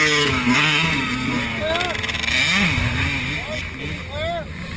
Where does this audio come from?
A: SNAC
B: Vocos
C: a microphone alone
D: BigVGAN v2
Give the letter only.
C